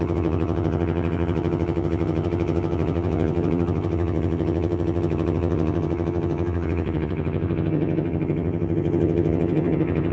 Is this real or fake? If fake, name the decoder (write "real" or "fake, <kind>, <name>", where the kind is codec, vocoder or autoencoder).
fake, vocoder, HiFi-GAN